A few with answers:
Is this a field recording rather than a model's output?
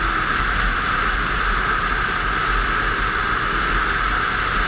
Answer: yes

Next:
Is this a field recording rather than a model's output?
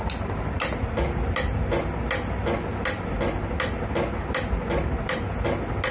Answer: yes